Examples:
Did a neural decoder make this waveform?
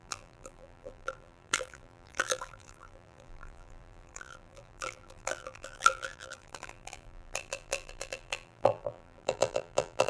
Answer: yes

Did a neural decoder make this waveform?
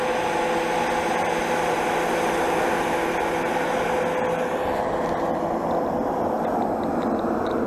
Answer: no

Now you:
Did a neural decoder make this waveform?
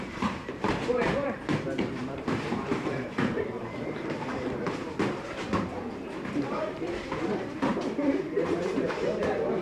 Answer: yes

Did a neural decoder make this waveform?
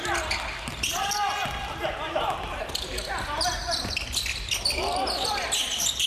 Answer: no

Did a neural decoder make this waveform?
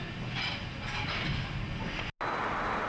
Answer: no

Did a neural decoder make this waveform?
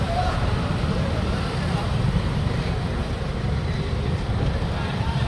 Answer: yes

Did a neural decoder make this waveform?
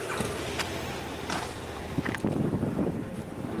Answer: no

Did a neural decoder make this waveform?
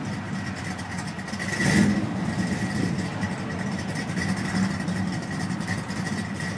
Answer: yes